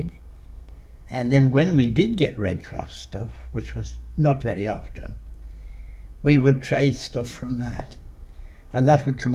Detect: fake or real fake